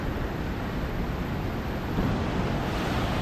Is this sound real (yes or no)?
yes